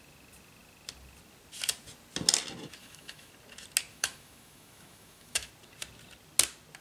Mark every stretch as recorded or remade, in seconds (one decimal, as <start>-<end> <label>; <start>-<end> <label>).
0.0-2.8 recorded; 2.8-3.3 remade; 3.3-3.9 recorded; 3.9-5.5 remade; 5.5-6.8 recorded